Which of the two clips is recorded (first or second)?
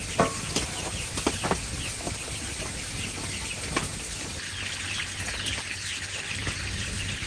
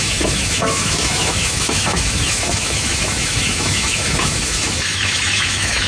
first